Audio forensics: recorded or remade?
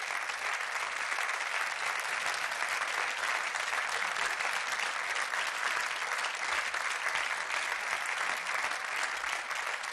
recorded